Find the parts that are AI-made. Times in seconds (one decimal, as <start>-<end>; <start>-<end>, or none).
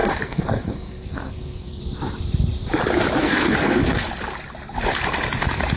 0.0-1.8; 3.2-4.0